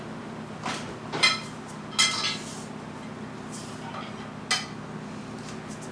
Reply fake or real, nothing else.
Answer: real